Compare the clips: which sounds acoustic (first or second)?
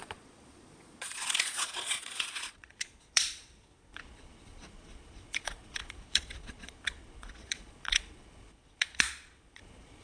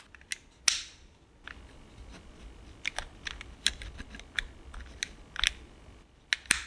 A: second